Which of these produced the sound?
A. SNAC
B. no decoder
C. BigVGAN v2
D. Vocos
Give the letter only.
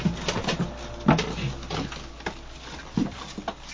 B